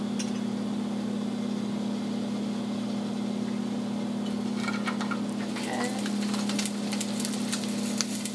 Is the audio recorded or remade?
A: recorded